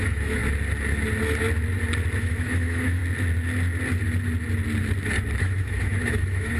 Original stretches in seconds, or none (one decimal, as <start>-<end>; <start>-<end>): 0.4-2.2; 3.0-5.4